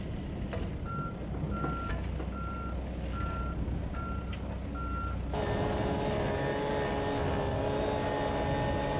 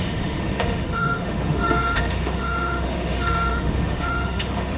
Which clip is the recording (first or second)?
first